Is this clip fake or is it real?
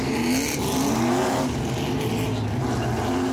real